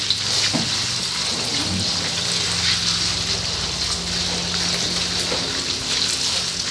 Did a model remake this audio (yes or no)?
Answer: no